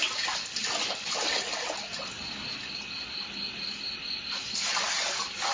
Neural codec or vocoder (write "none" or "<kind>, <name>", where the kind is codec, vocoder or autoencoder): none